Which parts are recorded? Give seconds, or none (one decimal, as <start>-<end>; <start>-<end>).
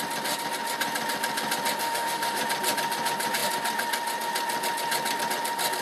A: 0.0-1.8; 2.4-5.8